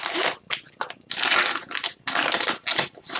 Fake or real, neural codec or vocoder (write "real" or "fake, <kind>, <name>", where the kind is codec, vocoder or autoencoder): real